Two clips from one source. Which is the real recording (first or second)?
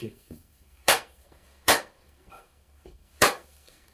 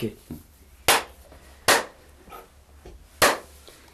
second